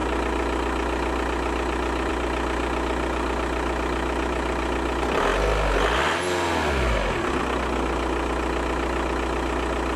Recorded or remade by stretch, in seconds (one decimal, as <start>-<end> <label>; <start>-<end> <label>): 0.0-10.0 recorded